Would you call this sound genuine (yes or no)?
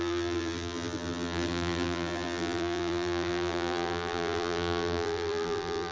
no